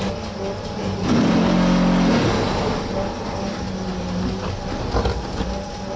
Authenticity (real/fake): real